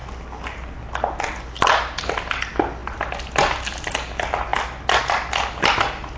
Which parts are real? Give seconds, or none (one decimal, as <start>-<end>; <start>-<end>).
0.0-6.2